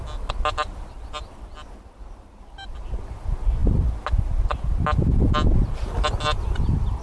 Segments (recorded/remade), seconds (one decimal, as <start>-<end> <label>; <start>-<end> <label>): 0.0-7.0 recorded